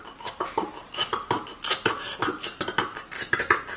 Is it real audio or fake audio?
real